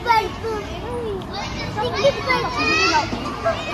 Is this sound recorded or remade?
recorded